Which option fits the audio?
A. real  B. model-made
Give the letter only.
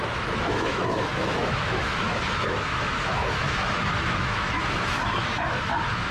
B